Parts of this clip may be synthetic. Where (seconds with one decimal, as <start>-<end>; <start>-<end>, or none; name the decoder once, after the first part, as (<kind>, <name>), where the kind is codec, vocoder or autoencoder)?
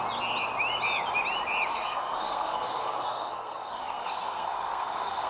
1.7-5.3 (codec, SNAC)